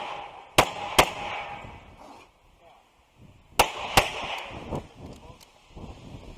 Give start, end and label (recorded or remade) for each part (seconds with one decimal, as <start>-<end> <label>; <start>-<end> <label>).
0.0-6.4 recorded